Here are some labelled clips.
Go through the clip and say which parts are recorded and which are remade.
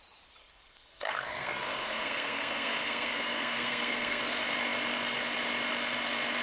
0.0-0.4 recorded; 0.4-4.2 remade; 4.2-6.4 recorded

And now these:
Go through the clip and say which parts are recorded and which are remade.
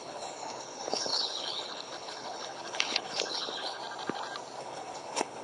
0.0-3.8 remade; 3.8-4.6 recorded; 4.6-5.4 remade